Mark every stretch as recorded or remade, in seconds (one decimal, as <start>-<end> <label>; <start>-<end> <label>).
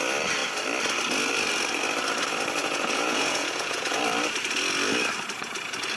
0.0-2.6 recorded; 2.6-4.0 remade; 4.0-6.0 recorded